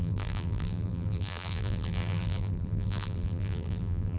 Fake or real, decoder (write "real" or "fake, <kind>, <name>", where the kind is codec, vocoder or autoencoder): fake, vocoder, BigVGAN v2